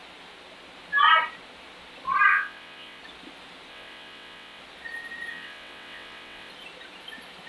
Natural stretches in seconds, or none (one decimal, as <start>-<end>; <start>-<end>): 0.0-2.3; 3.0-3.7; 4.6-5.3; 6.5-7.5